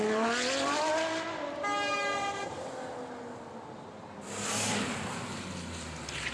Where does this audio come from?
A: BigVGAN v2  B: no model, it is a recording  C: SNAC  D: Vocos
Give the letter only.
B